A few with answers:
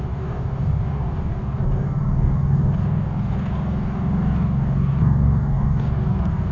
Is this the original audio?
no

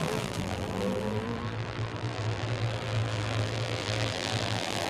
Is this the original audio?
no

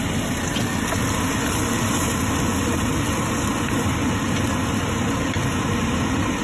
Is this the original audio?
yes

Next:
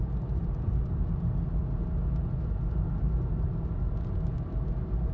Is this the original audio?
yes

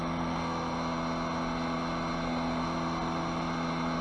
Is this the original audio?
yes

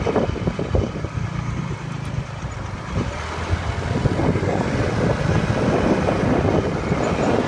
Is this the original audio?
yes